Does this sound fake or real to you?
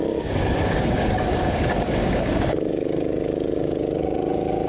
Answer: fake